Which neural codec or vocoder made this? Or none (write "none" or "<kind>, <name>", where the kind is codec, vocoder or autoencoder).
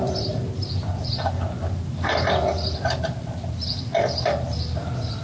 vocoder, BigVGAN v2